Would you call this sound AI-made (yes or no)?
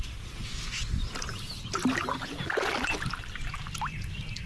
no